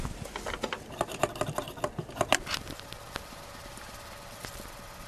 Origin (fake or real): real